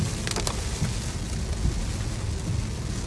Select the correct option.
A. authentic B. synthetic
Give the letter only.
A